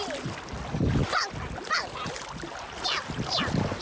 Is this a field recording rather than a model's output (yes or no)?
yes